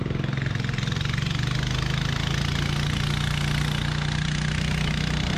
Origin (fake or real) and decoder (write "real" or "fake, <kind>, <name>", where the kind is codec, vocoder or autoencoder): real